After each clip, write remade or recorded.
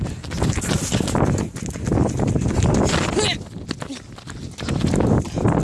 recorded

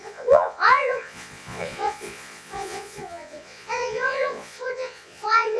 remade